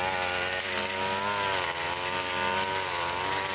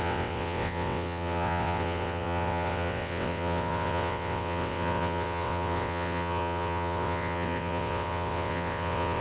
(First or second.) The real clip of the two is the first